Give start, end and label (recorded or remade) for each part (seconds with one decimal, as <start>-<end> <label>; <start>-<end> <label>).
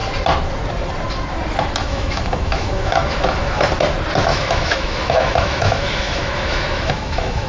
0.0-1.8 recorded; 1.8-3.6 remade; 3.6-4.3 recorded; 4.3-7.5 remade